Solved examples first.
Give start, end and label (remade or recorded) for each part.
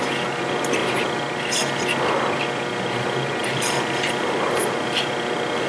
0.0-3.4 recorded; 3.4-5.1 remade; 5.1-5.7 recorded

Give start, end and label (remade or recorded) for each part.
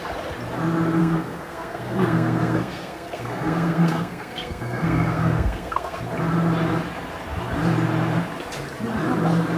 0.0-1.0 recorded; 1.0-6.0 remade; 6.0-9.6 recorded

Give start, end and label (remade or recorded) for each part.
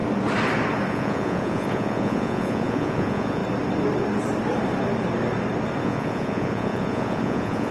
0.0-0.9 recorded; 0.9-3.4 remade; 3.4-5.8 recorded; 5.8-7.7 remade